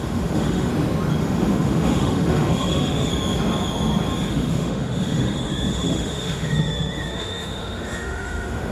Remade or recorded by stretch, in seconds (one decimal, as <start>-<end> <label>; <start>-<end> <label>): 0.0-0.7 remade; 0.7-1.2 recorded; 1.2-3.1 remade; 3.1-4.3 recorded; 4.3-8.7 remade